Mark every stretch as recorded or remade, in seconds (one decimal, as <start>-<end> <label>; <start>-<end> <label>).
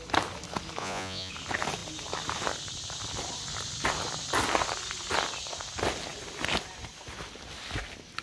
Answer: 0.0-0.8 recorded; 0.8-1.3 remade; 1.3-8.2 recorded